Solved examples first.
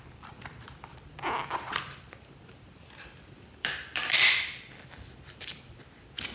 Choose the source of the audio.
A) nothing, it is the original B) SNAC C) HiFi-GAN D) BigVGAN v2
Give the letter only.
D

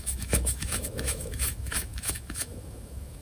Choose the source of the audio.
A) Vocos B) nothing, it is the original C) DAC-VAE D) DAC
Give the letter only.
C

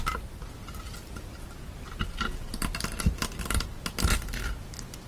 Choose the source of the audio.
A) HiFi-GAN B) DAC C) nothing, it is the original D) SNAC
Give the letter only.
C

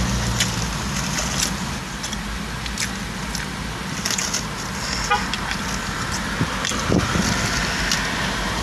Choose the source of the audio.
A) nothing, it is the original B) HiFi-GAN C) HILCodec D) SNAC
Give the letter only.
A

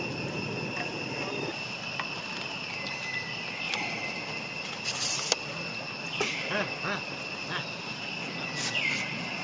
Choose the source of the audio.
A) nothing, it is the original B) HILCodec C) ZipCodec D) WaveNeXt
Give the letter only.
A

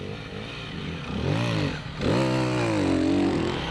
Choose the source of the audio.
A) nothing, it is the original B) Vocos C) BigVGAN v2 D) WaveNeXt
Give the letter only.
A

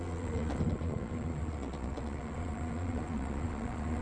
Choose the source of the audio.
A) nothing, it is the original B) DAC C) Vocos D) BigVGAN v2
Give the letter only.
C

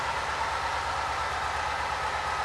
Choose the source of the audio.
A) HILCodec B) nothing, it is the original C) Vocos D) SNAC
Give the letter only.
B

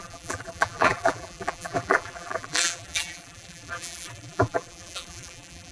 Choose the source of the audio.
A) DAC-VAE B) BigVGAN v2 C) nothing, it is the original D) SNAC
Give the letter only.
B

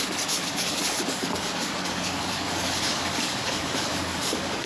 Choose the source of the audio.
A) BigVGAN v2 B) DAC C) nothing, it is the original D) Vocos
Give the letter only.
B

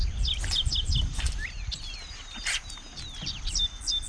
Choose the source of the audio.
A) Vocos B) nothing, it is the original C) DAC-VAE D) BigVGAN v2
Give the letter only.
B